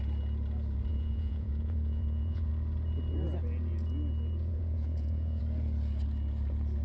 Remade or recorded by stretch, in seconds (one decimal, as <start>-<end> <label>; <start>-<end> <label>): 0.0-0.9 recorded; 0.9-2.5 remade; 2.5-4.5 recorded; 4.5-5.4 remade; 5.4-6.8 recorded